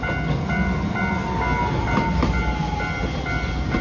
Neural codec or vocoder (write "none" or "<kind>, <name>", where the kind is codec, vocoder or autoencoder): none